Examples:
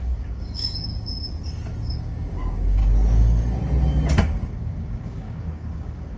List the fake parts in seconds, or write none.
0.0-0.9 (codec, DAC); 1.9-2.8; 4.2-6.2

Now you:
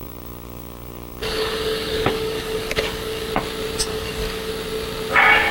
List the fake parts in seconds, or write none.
0.0-3.3 (codec, DAC); 3.9-4.5

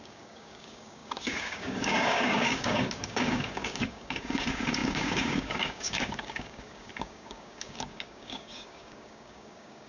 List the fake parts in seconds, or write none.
0.0-9.9 (codec, DAC)

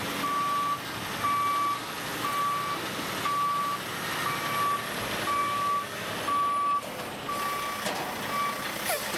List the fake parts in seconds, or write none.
5.4-6.2 (codec, DAC)